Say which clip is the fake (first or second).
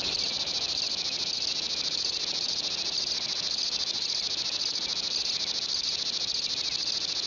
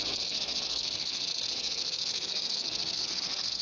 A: second